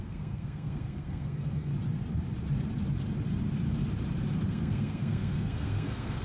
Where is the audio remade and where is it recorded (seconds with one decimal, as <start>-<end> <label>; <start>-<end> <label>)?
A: 0.0-1.7 remade; 1.7-4.5 recorded; 4.5-6.2 remade